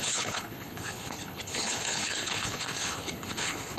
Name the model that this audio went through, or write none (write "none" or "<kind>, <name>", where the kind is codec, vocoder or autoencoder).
codec, HILCodec